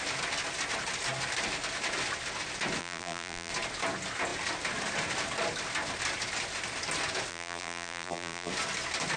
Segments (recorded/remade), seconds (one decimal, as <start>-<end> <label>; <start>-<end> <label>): 0.0-2.8 recorded; 2.8-3.5 remade; 3.5-7.3 recorded; 7.3-8.5 remade; 8.5-9.2 recorded